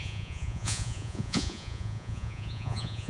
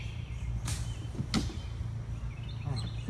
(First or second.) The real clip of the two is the second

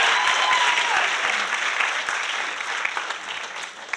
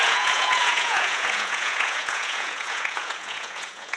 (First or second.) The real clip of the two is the first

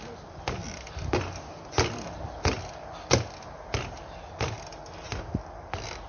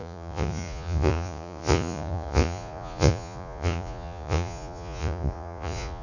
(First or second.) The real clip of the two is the first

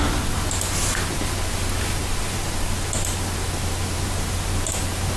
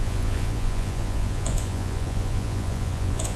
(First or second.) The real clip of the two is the first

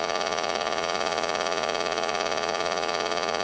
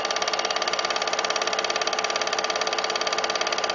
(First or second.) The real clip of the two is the second